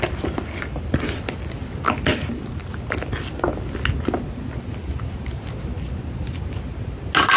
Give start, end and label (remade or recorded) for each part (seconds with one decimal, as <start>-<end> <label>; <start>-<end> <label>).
0.0-7.4 recorded